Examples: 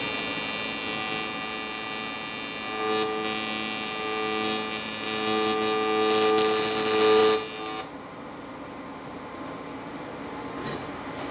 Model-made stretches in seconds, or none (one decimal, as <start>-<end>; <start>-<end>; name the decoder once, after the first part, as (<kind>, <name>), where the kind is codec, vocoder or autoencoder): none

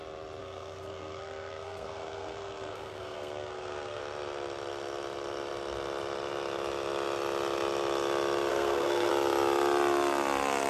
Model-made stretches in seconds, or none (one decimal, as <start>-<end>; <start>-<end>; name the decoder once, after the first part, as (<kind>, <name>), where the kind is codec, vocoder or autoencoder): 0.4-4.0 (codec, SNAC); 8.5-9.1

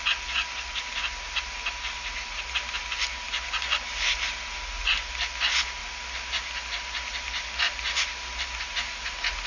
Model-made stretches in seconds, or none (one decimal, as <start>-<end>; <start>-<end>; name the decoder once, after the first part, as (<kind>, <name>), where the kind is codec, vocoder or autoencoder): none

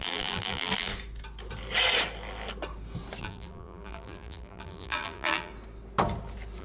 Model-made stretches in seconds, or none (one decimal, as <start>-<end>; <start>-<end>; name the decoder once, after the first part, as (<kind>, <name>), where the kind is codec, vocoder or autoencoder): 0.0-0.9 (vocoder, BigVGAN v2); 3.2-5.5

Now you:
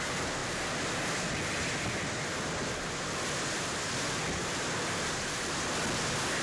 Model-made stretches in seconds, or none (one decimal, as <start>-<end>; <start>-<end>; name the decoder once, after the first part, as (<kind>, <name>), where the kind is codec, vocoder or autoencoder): none

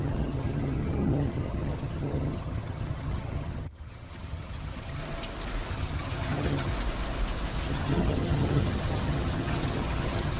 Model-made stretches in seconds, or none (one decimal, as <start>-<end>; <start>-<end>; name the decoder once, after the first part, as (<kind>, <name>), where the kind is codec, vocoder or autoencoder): 0.0-5.0 (vocoder, HiFi-GAN); 5.7-6.7; 7.7-10.4

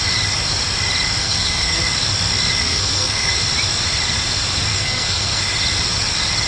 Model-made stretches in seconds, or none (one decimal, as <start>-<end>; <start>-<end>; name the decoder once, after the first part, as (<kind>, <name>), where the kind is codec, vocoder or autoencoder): 1.2-1.8 (codec, SNAC); 2.6-3.4; 4.7-5.4